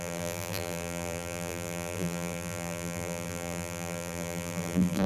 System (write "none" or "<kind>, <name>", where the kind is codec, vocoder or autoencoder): vocoder, BigVGAN v2